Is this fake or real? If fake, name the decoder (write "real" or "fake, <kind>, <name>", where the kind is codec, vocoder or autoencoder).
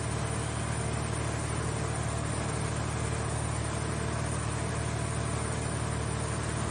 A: real